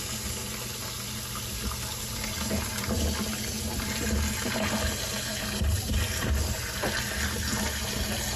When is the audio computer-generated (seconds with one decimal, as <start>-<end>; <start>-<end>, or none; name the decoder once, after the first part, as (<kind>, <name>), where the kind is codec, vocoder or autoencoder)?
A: none